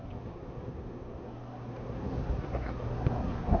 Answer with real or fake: fake